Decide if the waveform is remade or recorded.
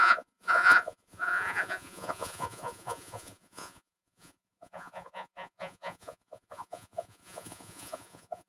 remade